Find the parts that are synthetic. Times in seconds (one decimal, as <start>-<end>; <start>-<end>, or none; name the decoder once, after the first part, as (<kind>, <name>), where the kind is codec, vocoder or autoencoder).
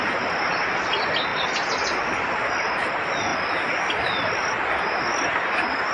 none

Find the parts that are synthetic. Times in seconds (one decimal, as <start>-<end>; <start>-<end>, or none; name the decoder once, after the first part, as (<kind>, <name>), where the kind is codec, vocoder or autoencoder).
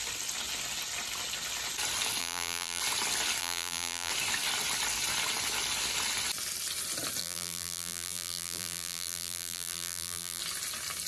2.2-2.8 (vocoder, BigVGAN v2); 3.4-4.1; 7.2-10.4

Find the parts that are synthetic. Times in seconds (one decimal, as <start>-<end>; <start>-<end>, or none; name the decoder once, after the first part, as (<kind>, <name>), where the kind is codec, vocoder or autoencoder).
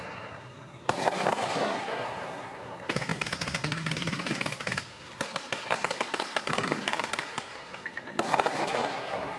0.0-9.4 (codec, SNAC)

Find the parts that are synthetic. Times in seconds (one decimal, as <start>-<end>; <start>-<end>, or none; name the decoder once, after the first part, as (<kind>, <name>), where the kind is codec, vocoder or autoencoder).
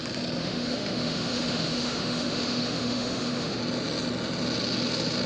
0.4-3.6 (autoencoder, DAC-VAE)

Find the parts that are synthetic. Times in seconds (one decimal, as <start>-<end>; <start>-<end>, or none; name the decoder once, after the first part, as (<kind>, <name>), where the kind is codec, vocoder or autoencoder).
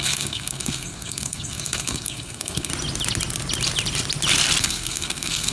0.0-2.7 (codec, SNAC); 4.6-5.5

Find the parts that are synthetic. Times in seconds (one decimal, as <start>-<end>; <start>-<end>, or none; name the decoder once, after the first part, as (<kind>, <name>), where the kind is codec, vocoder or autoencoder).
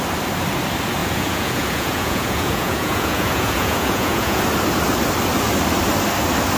1.0-4.4 (vocoder, Vocos)